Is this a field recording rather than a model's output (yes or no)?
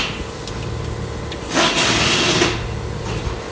yes